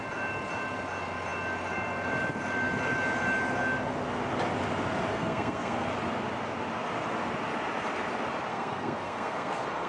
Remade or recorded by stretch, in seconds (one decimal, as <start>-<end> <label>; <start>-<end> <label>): 0.0-5.1 recorded; 5.1-5.9 remade; 5.9-8.5 recorded; 8.5-9.9 remade